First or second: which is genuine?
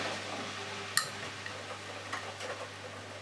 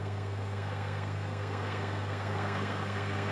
first